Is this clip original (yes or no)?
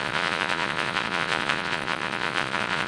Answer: no